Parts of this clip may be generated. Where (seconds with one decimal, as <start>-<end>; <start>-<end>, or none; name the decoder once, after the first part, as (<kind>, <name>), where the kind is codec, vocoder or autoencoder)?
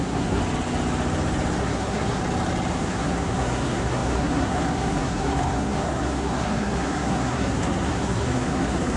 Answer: 0.0-0.4 (codec, SNAC); 1.6-2.2; 2.7-9.0